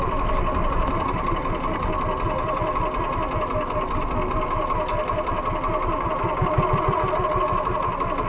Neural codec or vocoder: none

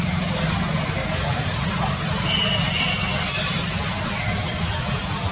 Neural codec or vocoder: none